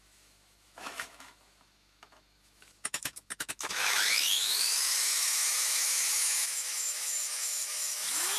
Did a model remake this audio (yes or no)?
yes